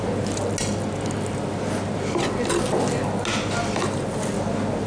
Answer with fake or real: real